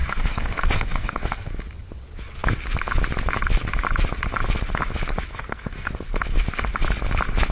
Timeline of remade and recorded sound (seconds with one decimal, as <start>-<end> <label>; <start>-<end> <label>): 0.0-1.5 remade; 1.5-5.3 recorded; 5.3-5.9 remade; 5.9-7.5 recorded